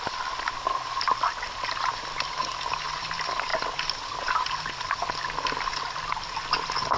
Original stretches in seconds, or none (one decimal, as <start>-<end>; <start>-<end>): 0.0-7.0